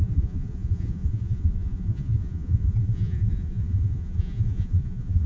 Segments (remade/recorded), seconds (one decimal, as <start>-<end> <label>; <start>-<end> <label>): 0.0-5.3 remade